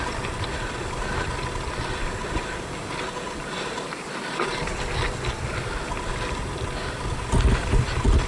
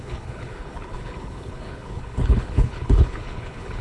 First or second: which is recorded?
first